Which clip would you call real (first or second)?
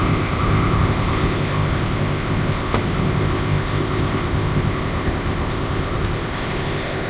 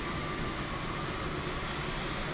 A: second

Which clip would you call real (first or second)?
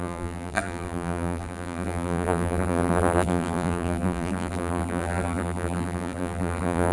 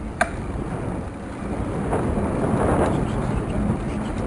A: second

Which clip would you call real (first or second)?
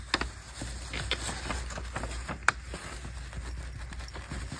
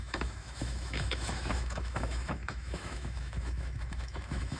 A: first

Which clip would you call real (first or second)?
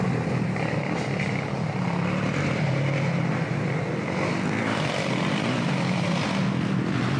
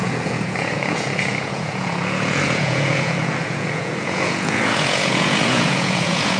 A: first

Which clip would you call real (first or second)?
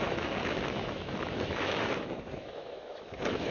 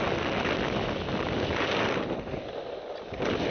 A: second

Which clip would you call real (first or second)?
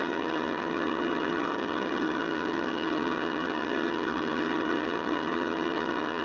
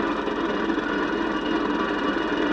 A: second